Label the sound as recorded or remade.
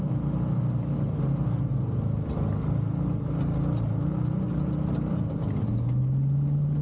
recorded